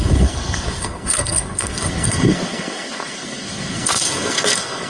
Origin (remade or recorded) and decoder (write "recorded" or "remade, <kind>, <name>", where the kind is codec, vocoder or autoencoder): remade, codec, SNAC